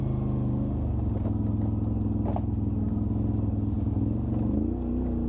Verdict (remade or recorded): recorded